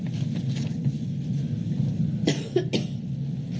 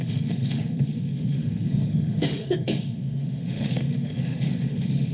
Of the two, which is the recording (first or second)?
first